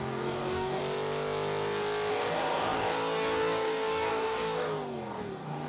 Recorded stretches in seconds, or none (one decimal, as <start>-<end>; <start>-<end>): 0.8-2.1